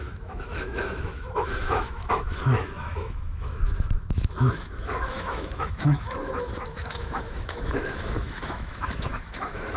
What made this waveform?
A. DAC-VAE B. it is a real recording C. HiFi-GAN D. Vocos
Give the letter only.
A